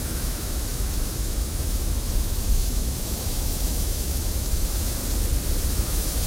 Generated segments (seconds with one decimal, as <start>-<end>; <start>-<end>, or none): 0.0-5.0; 5.7-6.3

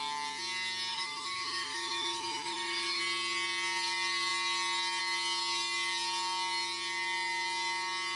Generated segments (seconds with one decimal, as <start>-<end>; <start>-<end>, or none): 0.9-3.0

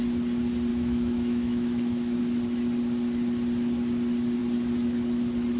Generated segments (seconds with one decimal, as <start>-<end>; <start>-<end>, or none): 0.7-2.2

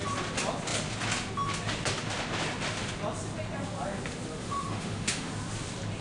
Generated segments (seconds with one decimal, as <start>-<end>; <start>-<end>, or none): 4.4-5.3

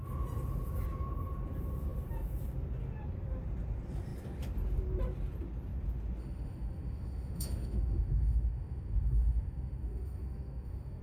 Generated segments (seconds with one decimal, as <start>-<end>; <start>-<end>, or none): 6.2-11.0

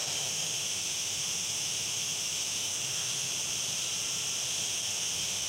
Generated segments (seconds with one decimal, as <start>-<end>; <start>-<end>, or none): 0.0-3.3; 4.6-5.5

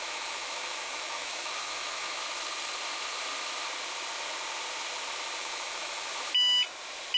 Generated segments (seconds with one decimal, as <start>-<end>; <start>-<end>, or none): 0.0-2.2; 5.4-6.1

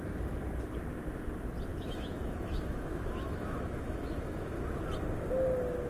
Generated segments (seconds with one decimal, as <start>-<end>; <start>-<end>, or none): 1.7-4.6